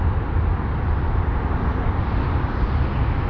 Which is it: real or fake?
real